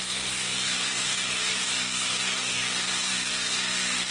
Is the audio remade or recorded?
remade